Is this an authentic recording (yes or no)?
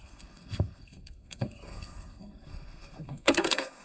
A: no